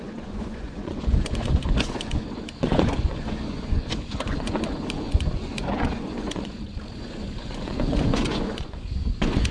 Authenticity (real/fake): fake